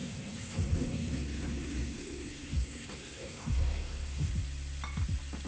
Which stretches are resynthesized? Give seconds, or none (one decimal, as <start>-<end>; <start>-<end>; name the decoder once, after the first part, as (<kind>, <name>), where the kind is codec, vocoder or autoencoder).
0.0-4.3 (codec, SNAC)